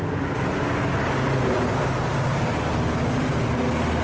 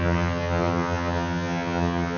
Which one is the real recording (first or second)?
first